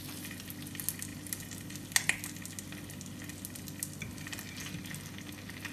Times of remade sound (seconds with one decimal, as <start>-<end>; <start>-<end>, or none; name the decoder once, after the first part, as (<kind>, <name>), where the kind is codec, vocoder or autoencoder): none